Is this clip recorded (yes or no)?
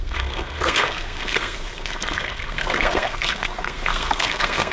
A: no